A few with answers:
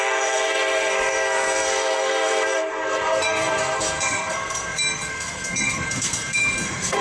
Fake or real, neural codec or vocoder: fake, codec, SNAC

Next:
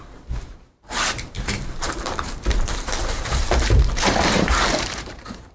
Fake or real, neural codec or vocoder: fake, vocoder, BigVGAN v2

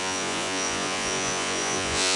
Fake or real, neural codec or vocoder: fake, vocoder, Vocos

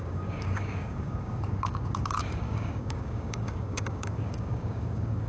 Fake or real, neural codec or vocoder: fake, codec, DAC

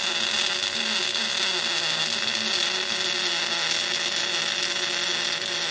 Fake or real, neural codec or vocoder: real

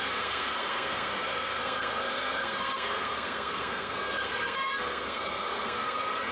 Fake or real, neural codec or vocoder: fake, codec, SNAC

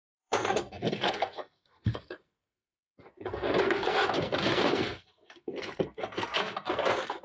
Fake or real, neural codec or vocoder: fake, codec, SNAC